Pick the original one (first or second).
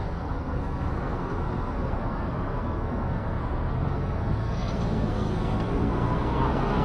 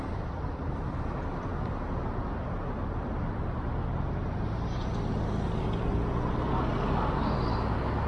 second